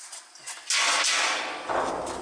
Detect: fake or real real